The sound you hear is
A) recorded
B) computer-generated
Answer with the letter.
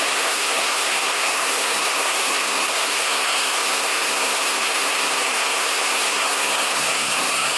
B